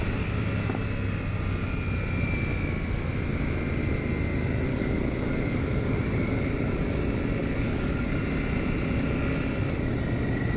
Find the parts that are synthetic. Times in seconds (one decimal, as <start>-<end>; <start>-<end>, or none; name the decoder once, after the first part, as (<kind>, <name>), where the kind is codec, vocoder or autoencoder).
4.7-7.0 (codec, DAC); 7.4-8.2